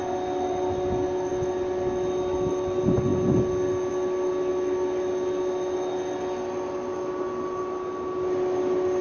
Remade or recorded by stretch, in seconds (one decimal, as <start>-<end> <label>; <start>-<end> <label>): 0.0-9.0 recorded